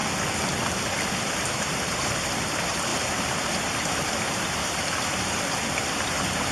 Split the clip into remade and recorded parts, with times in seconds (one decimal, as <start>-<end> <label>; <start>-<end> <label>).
0.0-1.1 recorded; 1.1-2.9 remade; 2.9-3.9 recorded; 3.9-6.5 remade